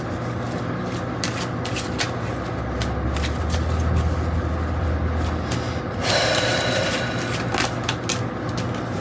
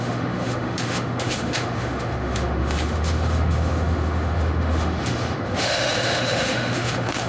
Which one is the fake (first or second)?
second